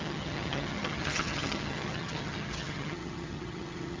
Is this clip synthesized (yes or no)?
yes